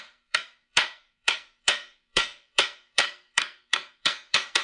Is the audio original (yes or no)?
no